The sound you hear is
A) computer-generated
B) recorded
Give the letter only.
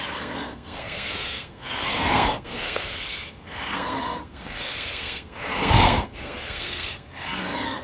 A